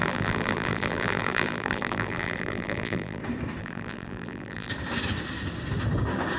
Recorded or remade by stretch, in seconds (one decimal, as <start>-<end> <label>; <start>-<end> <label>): 0.0-3.2 remade; 3.2-3.6 recorded; 3.6-4.7 remade; 4.7-6.4 recorded